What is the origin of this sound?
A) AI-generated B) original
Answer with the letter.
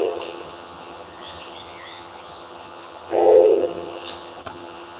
A